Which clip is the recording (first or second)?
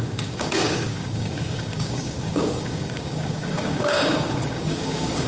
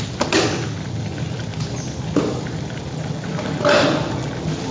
second